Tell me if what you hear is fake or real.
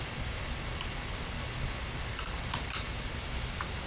real